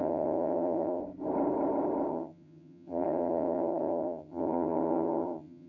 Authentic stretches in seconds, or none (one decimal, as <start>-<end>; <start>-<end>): 1.0-2.1